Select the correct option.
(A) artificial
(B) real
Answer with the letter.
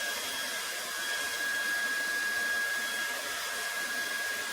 B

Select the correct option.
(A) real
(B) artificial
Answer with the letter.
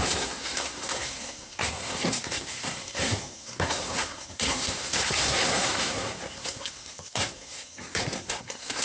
B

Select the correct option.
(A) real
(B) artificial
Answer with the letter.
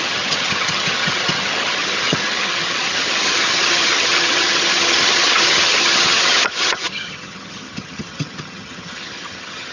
B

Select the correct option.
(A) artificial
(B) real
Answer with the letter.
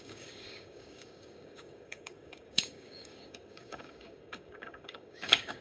A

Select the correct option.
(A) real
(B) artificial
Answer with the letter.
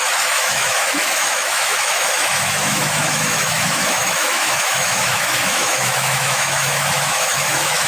B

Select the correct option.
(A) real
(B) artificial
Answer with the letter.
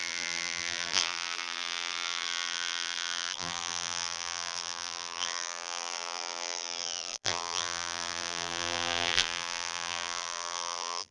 B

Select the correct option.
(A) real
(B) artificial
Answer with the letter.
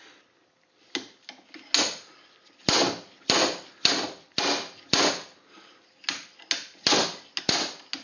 A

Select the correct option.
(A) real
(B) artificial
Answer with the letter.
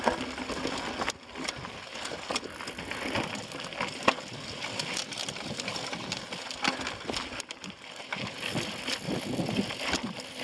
A